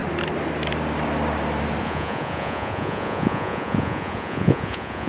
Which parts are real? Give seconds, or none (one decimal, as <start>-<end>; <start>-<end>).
0.0-1.8

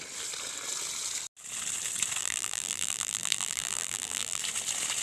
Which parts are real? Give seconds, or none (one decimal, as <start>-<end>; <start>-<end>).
0.0-2.2; 4.4-5.0

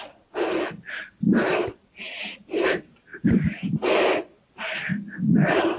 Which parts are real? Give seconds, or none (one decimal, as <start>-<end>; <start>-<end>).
0.0-5.8